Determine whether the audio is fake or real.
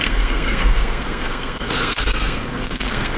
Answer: fake